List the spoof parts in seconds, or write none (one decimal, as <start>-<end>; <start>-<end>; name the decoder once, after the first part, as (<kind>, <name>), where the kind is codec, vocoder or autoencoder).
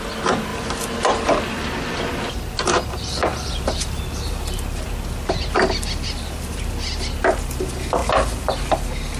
none